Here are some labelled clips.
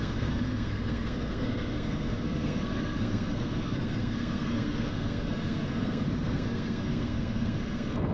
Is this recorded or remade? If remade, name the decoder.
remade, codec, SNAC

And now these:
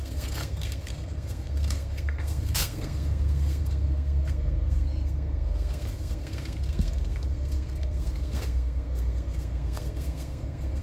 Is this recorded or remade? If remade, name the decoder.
remade, codec, SNAC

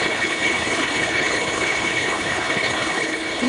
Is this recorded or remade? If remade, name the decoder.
remade, codec, HILCodec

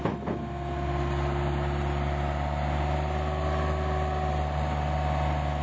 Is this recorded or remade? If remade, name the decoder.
recorded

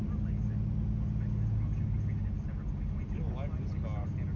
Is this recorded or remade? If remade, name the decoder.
recorded